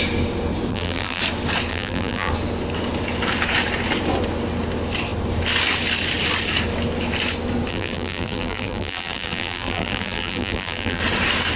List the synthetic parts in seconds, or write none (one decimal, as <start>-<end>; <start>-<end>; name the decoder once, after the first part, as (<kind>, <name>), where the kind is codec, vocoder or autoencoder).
0.7-1.2 (vocoder, BigVGAN v2); 1.7-2.3; 7.7-11.0